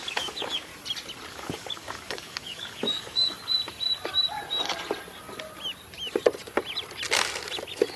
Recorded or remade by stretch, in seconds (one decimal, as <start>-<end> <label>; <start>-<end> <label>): 0.0-0.7 remade; 0.7-1.3 recorded; 1.3-3.3 remade; 3.3-8.0 recorded